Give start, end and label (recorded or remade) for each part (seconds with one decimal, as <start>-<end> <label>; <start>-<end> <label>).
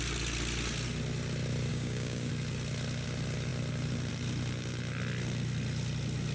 0.0-1.7 recorded; 1.7-2.3 remade; 2.3-6.3 recorded